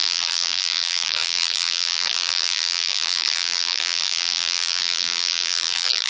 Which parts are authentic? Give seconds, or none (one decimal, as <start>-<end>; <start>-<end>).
none